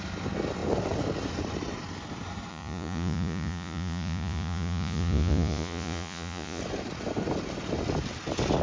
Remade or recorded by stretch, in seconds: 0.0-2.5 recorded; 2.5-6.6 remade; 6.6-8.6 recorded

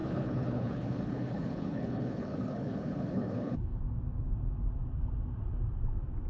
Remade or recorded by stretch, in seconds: 0.0-3.8 remade; 3.8-6.3 recorded

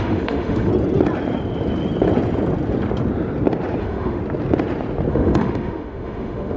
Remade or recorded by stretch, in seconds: 0.0-0.7 remade; 0.7-3.8 recorded; 3.8-4.2 remade; 4.2-5.1 recorded; 5.1-6.6 remade

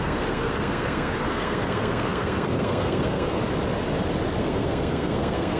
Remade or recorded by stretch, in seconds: 0.0-3.4 remade; 3.4-4.4 recorded; 4.4-5.6 remade